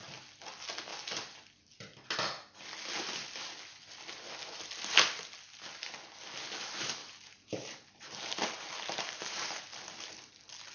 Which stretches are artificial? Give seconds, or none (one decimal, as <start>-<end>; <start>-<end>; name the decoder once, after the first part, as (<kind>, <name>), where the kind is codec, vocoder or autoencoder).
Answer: 7.0-9.5 (vocoder, BigVGAN v2)